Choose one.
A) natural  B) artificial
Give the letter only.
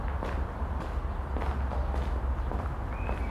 A